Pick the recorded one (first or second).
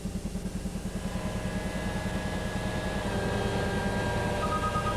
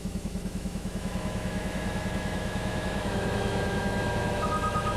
first